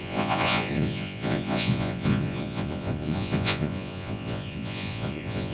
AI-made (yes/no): yes